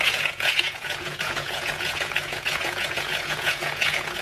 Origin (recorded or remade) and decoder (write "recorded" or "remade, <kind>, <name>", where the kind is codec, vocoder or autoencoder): remade, vocoder, Vocos